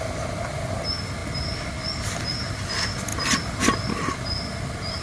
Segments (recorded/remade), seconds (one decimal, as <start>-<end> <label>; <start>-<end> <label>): 0.0-5.0 recorded